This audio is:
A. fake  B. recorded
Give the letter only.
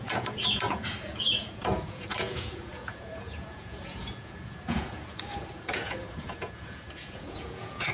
A